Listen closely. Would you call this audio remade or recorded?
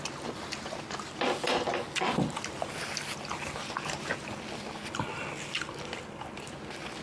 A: recorded